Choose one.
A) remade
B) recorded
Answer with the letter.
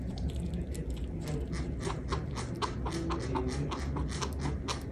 B